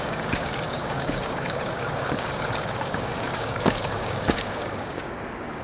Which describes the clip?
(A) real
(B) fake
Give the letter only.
B